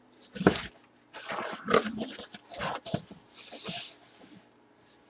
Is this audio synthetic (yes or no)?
no